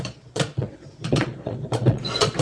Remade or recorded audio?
remade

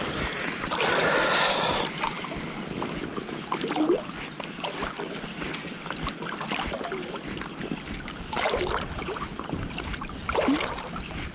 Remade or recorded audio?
recorded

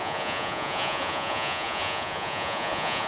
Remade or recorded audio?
remade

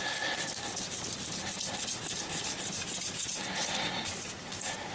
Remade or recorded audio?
recorded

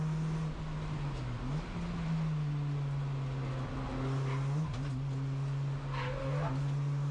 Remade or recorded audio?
recorded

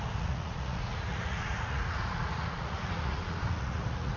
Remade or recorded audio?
remade